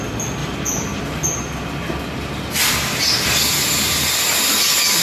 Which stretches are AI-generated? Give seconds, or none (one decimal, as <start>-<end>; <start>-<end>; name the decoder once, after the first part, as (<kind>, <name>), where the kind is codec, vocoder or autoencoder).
0.4-3.4 (vocoder, BigVGAN v2)